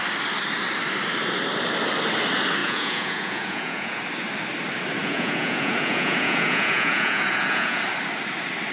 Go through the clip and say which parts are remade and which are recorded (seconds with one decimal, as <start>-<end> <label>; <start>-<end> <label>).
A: 0.0-2.6 recorded; 2.6-4.0 remade; 4.0-5.0 recorded; 5.0-7.8 remade; 7.8-8.7 recorded